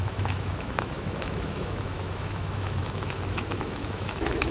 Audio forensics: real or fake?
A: fake